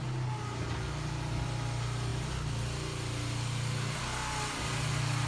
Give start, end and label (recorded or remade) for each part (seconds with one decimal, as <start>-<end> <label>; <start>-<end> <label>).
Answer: 0.0-5.3 recorded